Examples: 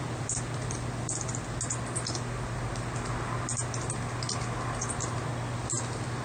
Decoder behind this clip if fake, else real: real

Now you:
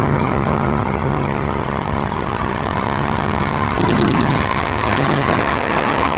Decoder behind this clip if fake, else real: fake, vocoder, HiFi-GAN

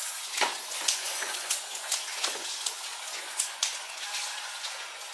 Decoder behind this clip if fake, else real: fake, vocoder, Vocos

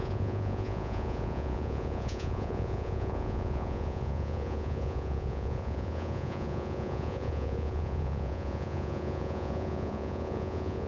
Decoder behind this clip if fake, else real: fake, vocoder, Vocos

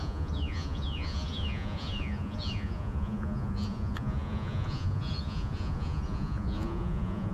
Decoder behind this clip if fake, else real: fake, vocoder, Vocos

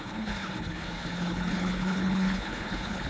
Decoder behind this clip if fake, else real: fake, codec, HILCodec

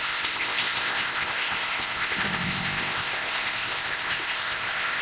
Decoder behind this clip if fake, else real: fake, codec, ZipCodec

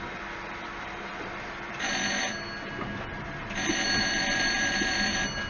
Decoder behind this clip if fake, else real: fake, vocoder, BigVGAN v2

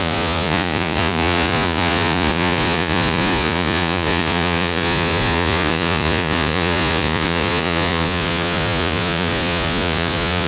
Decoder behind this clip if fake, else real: fake, vocoder, Vocos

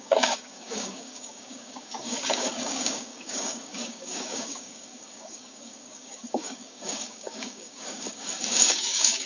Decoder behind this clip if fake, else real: fake, codec, DAC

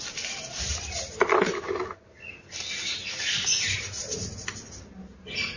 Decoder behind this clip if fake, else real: real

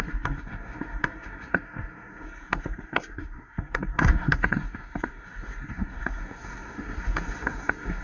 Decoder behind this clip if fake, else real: fake, codec, SNAC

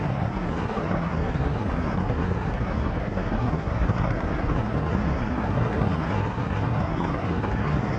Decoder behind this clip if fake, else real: fake, codec, SNAC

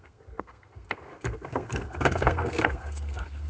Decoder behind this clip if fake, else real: fake, codec, SNAC